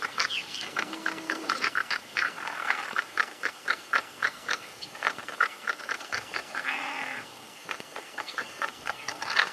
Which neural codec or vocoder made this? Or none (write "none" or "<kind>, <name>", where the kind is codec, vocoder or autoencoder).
codec, SNAC